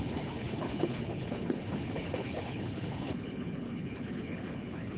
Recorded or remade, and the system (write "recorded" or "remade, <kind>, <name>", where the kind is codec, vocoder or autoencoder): remade, codec, HILCodec